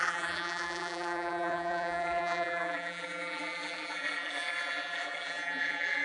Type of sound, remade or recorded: remade